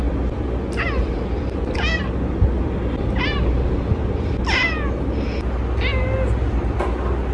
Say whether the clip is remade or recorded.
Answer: recorded